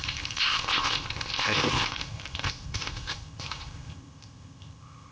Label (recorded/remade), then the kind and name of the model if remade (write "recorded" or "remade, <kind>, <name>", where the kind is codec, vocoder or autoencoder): remade, codec, ZipCodec